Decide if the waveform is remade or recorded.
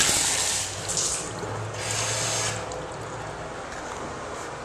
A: recorded